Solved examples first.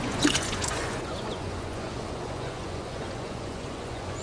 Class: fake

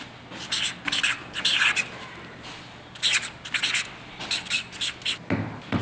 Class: real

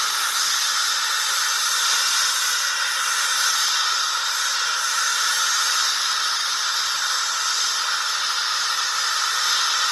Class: real